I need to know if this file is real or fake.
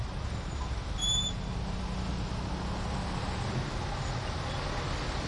real